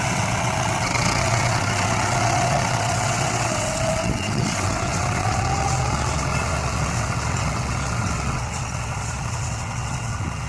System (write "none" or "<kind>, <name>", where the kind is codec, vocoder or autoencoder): vocoder, WaveNeXt